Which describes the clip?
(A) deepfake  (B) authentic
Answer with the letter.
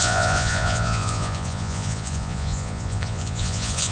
A